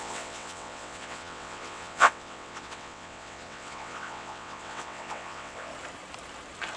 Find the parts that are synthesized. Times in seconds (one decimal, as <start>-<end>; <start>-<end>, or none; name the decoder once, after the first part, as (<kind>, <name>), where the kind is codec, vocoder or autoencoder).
0.0-5.7 (vocoder, WaveNeXt)